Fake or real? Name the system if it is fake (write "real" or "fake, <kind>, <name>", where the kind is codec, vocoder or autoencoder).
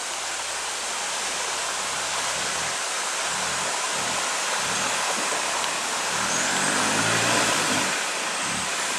real